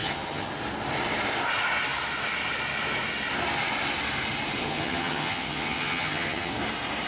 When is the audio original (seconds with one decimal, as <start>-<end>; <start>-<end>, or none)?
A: 0.5-4.6; 6.5-7.1